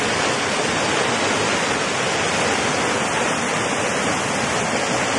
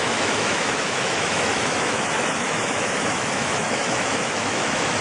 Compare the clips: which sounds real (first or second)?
first